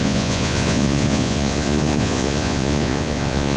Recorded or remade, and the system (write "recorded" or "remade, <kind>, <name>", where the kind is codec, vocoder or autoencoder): remade, vocoder, Vocos